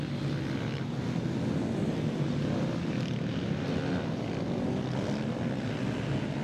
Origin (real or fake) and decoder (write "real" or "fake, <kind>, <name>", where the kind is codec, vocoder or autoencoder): real